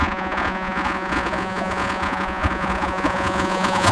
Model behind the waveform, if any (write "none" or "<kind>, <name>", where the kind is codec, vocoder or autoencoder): vocoder, Vocos